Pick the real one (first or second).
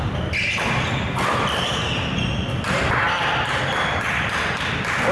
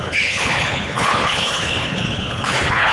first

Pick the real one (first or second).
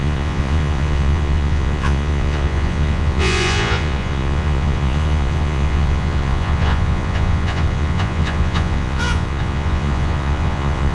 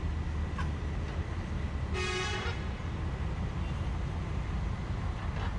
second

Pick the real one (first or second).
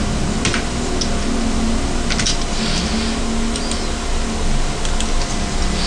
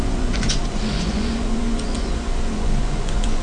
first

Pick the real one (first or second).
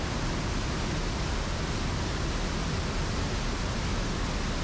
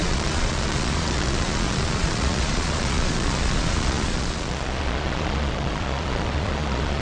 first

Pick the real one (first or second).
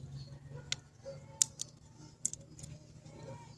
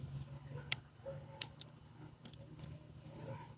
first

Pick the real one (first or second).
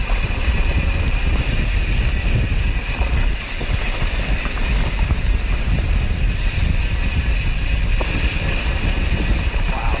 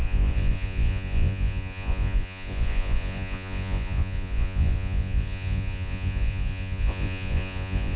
first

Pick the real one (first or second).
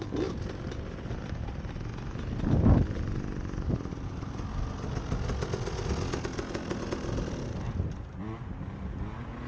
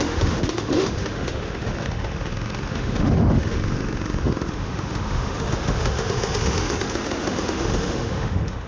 first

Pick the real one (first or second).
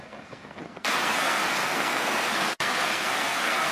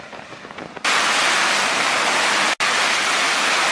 second